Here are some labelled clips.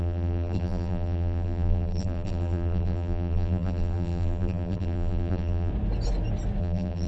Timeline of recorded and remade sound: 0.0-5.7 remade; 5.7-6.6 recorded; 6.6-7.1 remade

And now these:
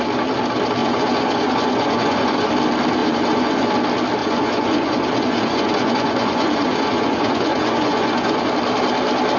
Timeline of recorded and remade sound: 0.0-0.8 recorded; 0.8-2.5 remade; 2.5-3.0 recorded; 3.0-3.7 remade; 3.7-4.2 recorded; 4.2-8.5 remade; 8.5-9.4 recorded

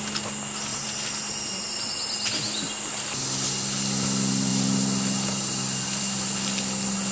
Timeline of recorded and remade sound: 0.0-0.7 recorded; 0.7-1.4 remade; 1.4-7.1 recorded